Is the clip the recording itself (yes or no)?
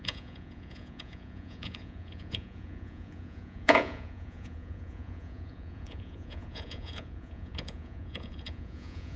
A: no